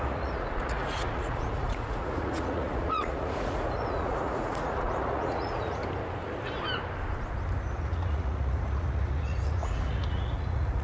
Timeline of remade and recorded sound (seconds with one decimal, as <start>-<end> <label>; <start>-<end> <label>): 0.0-5.8 remade; 5.8-7.8 recorded; 7.8-10.8 remade